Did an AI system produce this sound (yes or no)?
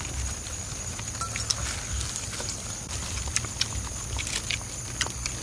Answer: yes